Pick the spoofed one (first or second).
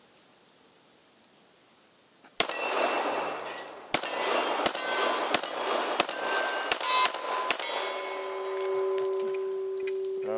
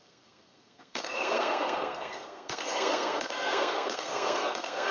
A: second